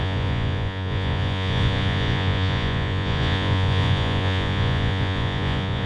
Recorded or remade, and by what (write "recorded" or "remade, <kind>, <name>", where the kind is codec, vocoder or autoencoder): remade, vocoder, Vocos